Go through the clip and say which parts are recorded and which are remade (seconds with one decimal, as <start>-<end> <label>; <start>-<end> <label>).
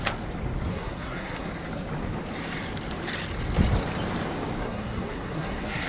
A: 0.0-0.7 recorded; 0.7-1.5 remade; 1.5-4.6 recorded; 4.6-5.9 remade